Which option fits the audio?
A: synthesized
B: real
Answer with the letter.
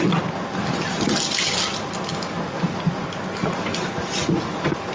B